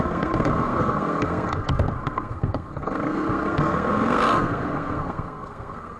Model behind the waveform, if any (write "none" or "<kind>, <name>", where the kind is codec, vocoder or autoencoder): codec, SNAC